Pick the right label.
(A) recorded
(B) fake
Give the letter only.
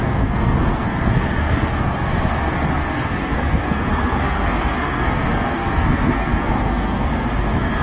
B